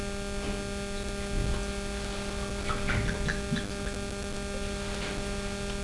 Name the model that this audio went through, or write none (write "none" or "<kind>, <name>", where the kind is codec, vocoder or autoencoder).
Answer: none